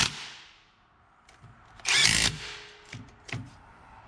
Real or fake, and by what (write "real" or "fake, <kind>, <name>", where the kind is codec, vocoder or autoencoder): real